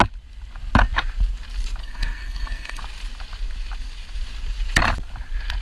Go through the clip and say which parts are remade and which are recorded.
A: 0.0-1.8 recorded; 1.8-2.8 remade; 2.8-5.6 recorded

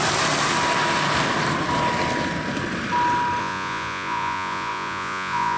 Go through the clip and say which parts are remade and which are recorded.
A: 0.0-3.4 recorded; 3.4-5.6 remade

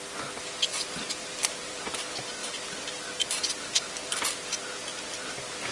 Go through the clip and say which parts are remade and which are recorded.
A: 0.0-0.7 recorded; 0.7-1.8 remade; 1.8-2.4 recorded; 2.4-4.5 remade; 4.5-5.7 recorded

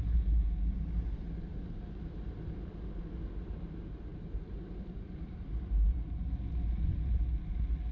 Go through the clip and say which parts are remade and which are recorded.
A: 0.0-4.1 recorded; 4.1-6.3 remade; 6.3-7.9 recorded

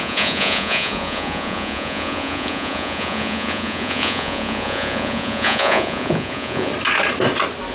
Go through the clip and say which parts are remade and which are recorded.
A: 0.0-6.7 remade; 6.7-7.7 recorded

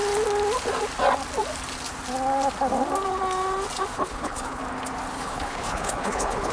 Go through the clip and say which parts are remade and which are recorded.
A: 0.0-3.9 recorded; 3.9-4.6 remade; 4.6-5.1 recorded; 5.1-6.5 remade

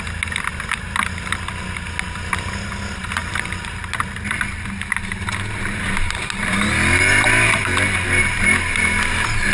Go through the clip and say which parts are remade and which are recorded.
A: 0.0-9.5 recorded

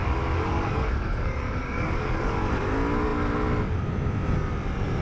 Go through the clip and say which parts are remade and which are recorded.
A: 0.0-2.5 remade; 2.5-5.0 recorded